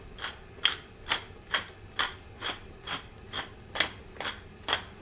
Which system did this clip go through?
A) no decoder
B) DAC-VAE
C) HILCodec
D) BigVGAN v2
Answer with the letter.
A